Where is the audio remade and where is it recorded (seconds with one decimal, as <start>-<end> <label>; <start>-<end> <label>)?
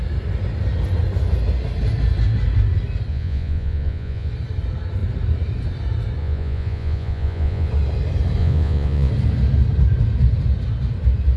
0.0-3.1 recorded; 3.1-4.3 remade; 4.3-6.2 recorded; 6.2-7.7 remade; 7.7-8.4 recorded; 8.4-9.1 remade; 9.1-11.4 recorded